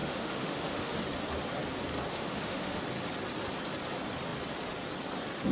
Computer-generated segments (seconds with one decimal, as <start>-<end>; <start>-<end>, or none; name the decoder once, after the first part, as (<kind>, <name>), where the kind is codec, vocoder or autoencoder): 0.0-1.0 (autoencoder, DAC-VAE); 2.1-2.8